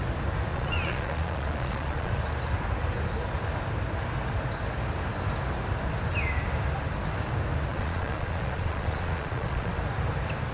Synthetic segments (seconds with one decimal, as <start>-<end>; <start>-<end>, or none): 0.5-2.2; 7.7-9.7